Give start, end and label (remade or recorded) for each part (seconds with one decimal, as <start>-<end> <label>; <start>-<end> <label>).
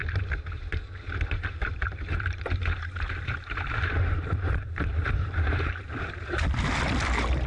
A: 0.0-7.5 remade